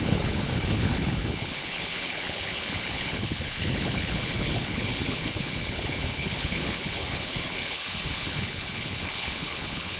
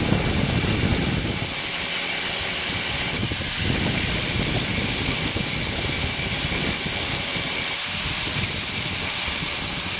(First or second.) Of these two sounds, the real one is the second